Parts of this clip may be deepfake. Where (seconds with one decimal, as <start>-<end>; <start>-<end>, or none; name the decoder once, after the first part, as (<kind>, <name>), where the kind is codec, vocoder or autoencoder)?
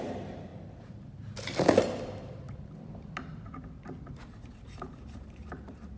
0.0-0.5 (vocoder, BigVGAN v2); 4.1-6.0